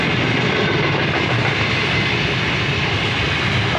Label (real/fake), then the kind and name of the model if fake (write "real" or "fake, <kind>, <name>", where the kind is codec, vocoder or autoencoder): real